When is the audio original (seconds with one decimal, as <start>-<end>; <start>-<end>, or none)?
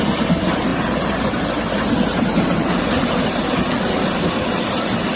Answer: 0.0-5.2